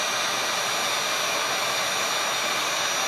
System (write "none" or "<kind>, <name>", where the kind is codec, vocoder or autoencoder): none